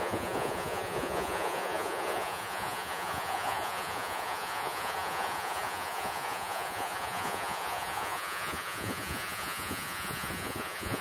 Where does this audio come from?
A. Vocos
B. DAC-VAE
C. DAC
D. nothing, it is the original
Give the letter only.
A